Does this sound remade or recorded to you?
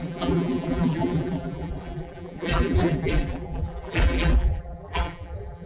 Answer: remade